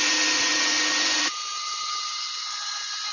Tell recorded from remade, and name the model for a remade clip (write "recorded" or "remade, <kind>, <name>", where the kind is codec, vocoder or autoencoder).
remade, vocoder, Vocos